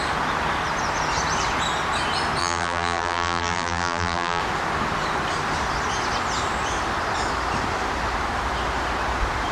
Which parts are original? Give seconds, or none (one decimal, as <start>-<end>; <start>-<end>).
0.0-2.4; 4.4-9.5